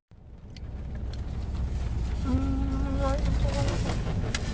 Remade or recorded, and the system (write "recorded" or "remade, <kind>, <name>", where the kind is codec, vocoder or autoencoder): recorded